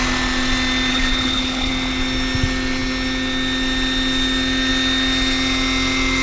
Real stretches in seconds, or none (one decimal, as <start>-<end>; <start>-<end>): 0.0-0.9; 1.7-6.2